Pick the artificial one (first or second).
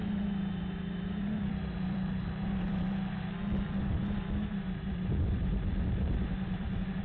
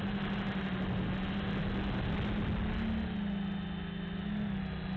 first